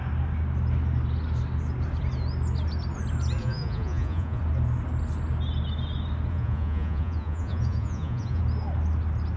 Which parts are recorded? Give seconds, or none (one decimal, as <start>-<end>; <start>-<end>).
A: 0.0-3.4; 4.4-6.3; 8.4-9.4